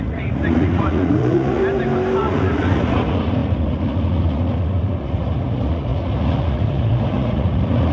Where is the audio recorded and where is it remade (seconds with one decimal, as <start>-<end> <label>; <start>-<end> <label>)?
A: 0.0-1.6 remade; 1.6-2.2 recorded; 2.2-7.9 remade

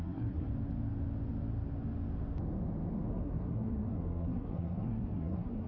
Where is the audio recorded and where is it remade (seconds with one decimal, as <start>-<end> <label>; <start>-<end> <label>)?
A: 0.0-0.5 remade; 0.5-3.1 recorded; 3.1-5.7 remade

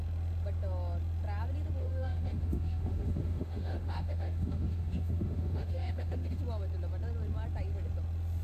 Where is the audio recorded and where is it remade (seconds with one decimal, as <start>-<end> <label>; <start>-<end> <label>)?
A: 0.0-1.8 recorded; 1.8-6.4 remade; 6.4-8.4 recorded